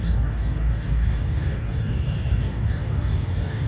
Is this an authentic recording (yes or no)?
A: no